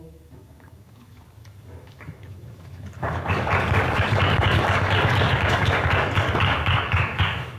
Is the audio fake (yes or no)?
yes